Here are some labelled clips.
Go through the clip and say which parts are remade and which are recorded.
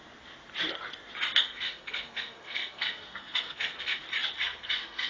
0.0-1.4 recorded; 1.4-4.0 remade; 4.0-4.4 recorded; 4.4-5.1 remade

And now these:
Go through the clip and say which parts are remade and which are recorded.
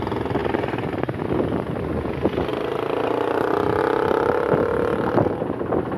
0.0-6.0 recorded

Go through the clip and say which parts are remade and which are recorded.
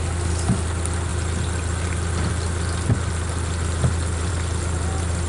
0.0-5.3 recorded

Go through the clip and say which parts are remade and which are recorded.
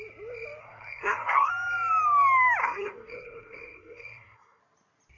0.0-0.6 recorded; 0.6-1.5 remade; 1.5-2.6 recorded; 2.6-4.6 remade; 4.6-5.2 recorded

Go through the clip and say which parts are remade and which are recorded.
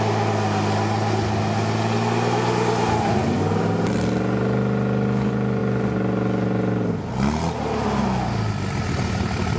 0.0-9.6 recorded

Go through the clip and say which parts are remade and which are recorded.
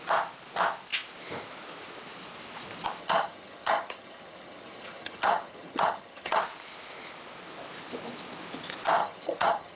0.0-3.0 recorded; 3.0-6.4 remade; 6.4-9.0 recorded; 9.0-9.8 remade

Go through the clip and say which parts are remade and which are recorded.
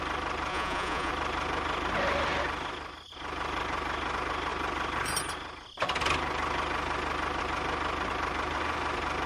0.0-0.5 recorded; 0.5-1.1 remade; 1.1-9.3 recorded